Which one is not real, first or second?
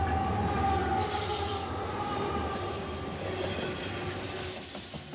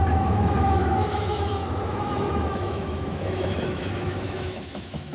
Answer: second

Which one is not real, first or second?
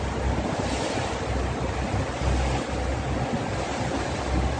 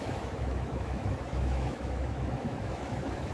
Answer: second